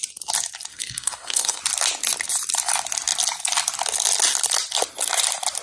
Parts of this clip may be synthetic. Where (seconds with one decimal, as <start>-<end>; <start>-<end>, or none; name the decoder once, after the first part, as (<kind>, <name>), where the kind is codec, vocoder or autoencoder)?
0.7-1.6 (codec, SNAC)